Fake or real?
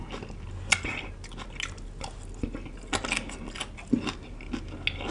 real